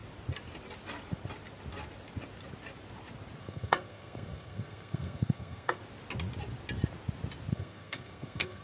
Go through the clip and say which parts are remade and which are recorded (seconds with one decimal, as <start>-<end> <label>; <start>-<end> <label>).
0.0-3.4 recorded; 3.4-5.8 remade; 5.8-7.5 recorded; 7.5-8.6 remade